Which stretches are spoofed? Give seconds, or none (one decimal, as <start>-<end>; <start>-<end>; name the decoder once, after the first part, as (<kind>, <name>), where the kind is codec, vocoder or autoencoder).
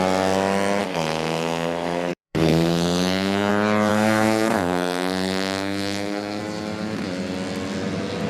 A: 0.8-3.5 (codec, SNAC); 3.9-6.4